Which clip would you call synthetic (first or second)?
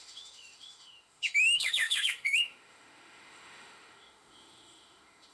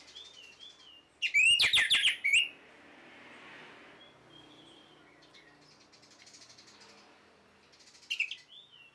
first